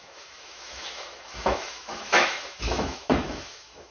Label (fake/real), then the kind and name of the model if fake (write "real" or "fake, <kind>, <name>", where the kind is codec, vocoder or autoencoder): fake, autoencoder, DAC-VAE